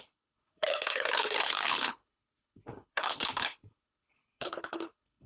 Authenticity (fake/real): fake